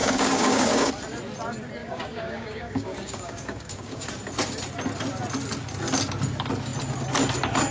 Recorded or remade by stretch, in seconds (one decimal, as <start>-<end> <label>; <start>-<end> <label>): 0.0-0.9 remade; 0.9-1.8 recorded; 1.8-4.1 remade; 4.1-7.7 recorded